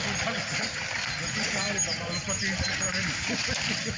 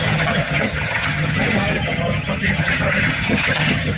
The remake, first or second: second